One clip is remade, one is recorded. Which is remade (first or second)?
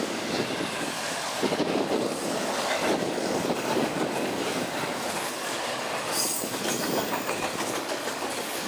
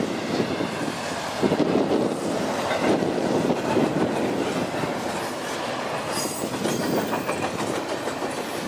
first